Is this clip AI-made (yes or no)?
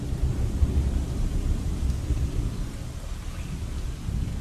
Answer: no